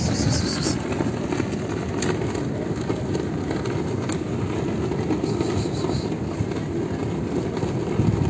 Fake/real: real